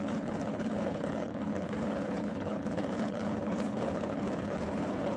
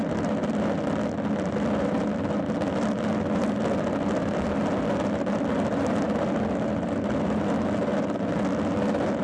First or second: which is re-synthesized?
first